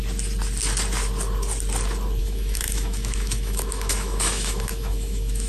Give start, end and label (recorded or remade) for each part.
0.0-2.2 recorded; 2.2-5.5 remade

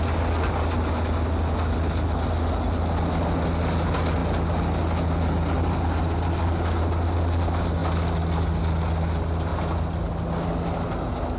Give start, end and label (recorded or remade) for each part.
0.0-11.4 recorded

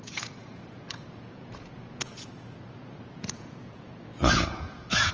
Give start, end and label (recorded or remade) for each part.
0.0-5.1 remade

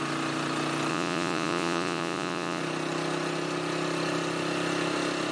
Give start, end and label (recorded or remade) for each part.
0.0-0.9 recorded; 0.9-2.6 remade; 2.6-5.3 recorded

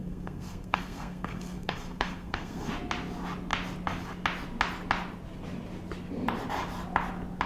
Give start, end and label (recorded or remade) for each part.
0.0-2.7 remade; 2.7-7.5 recorded